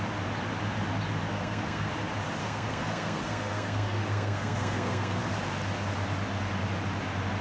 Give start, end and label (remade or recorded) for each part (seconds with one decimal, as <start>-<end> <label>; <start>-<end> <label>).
0.0-1.3 recorded; 1.3-1.9 remade; 1.9-2.4 recorded; 2.4-5.2 remade; 5.2-7.4 recorded